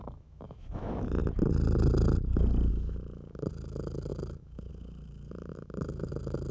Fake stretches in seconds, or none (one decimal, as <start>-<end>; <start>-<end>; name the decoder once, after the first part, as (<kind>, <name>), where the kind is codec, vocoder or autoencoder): 0.0-1.2 (autoencoder, DAC-VAE); 2.7-6.5